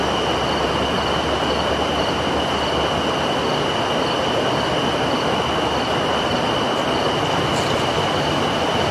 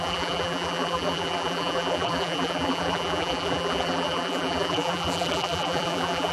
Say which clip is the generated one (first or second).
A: second